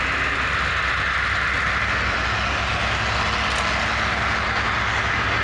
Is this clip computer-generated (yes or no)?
no